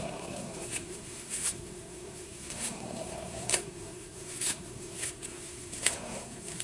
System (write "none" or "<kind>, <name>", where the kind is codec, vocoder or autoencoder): codec, SNAC